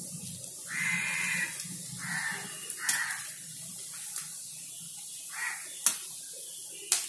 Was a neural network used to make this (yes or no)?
no